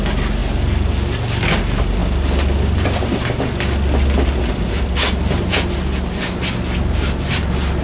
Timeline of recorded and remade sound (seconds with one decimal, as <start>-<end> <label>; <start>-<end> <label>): 0.0-7.8 recorded